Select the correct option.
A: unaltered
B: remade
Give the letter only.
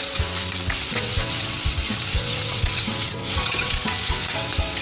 B